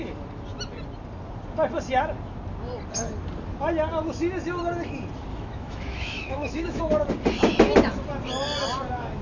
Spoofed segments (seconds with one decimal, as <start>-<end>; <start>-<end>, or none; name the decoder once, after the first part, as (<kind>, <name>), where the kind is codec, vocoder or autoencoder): 5.3-6.8 (autoencoder, DAC-VAE)